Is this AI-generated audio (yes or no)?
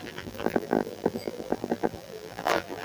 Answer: yes